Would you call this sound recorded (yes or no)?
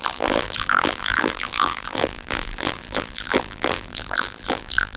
no